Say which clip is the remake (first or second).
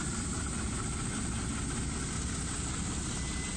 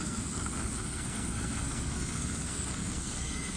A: second